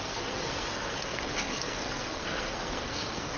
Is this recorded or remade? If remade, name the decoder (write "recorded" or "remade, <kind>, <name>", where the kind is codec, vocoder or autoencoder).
remade, codec, SNAC